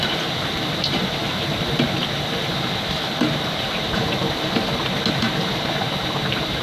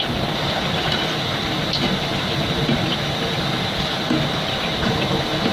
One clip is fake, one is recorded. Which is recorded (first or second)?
second